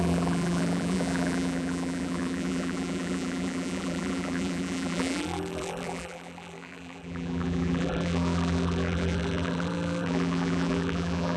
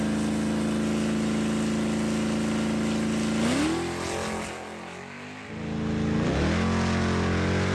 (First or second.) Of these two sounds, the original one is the second